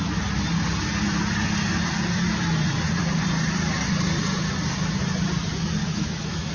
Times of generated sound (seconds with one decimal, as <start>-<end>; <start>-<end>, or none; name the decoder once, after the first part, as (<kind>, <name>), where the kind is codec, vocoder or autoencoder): 5.8-6.5 (autoencoder, DAC-VAE)